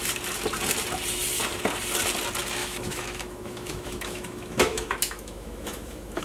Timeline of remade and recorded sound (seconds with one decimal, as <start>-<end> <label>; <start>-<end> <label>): 0.0-2.6 recorded; 2.6-6.2 remade